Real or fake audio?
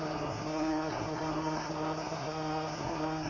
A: fake